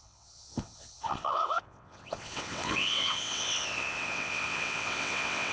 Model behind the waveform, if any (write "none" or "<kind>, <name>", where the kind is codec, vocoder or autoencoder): vocoder, WaveNeXt